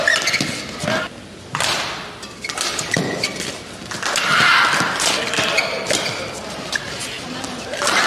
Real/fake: real